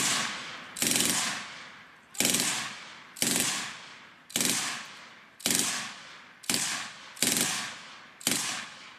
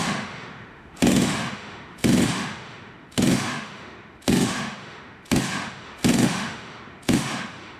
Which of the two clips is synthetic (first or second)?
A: second